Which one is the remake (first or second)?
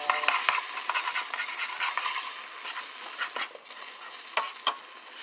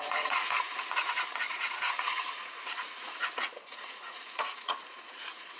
second